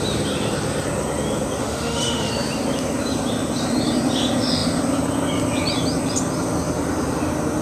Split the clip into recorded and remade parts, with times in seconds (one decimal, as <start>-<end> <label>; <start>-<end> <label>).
0.0-1.6 recorded; 1.6-2.3 remade; 2.3-7.6 recorded